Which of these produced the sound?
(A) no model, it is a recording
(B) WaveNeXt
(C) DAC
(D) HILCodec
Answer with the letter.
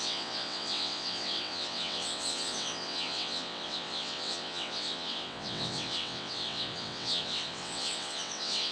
B